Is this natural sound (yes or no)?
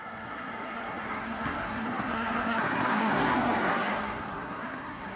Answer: no